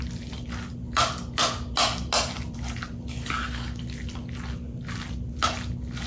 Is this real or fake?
real